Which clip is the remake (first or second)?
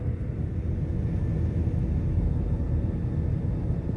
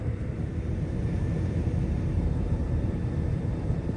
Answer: second